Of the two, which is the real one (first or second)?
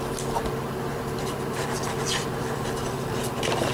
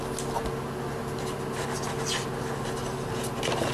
second